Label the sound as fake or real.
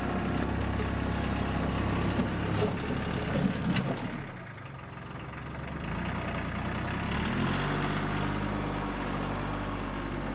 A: real